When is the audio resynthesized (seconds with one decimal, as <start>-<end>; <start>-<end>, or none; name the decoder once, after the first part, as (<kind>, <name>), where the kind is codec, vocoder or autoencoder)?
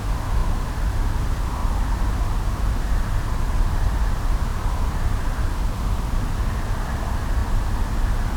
none